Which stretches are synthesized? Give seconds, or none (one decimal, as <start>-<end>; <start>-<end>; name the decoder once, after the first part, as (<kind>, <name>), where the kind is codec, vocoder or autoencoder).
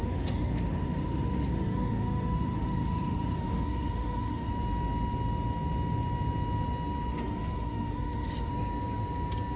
0.0-4.5 (autoencoder, DAC-VAE); 7.1-8.5